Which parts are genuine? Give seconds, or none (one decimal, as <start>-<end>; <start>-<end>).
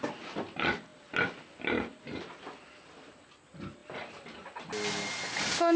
0.0-5.8